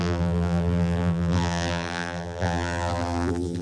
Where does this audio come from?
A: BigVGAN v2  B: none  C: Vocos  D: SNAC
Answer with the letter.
A